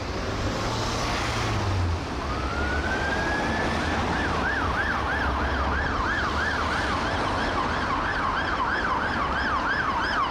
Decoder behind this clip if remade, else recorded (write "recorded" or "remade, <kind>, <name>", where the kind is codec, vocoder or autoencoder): recorded